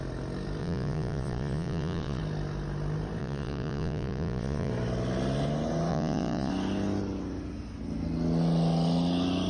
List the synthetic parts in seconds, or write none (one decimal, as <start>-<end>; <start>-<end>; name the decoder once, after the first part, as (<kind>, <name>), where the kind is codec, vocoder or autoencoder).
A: 0.6-2.2 (vocoder, Vocos); 3.2-4.7; 5.9-6.5